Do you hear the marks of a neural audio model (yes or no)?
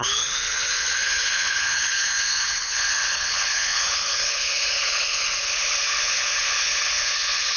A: yes